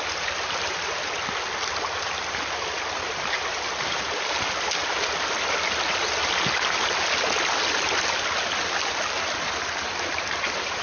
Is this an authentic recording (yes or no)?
yes